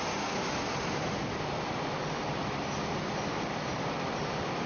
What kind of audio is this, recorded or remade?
recorded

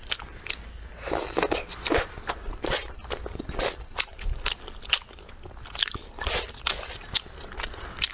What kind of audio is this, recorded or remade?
recorded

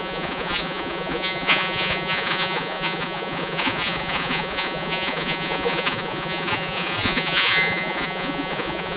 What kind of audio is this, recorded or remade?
remade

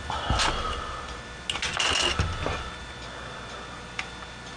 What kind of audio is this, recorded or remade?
recorded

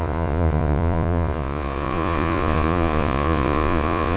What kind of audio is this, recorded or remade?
remade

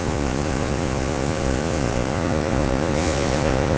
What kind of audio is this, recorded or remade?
remade